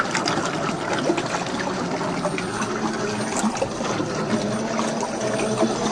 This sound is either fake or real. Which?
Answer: real